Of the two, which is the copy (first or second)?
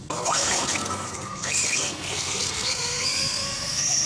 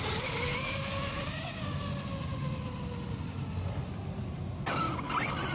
first